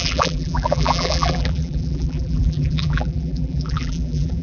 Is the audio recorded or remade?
remade